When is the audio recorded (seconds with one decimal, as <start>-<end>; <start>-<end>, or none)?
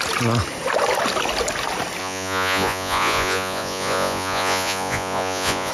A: 0.0-2.0